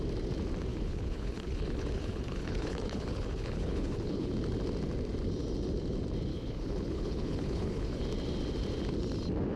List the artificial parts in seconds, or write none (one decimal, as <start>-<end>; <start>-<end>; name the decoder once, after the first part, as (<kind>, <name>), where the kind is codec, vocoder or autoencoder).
0.7-4.3 (codec, HILCodec); 6.3-8.0